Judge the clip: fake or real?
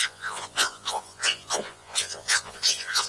fake